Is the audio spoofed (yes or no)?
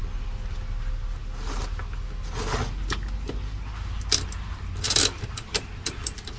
no